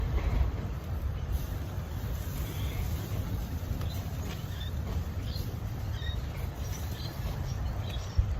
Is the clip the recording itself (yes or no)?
no